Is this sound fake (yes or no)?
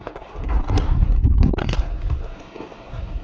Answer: yes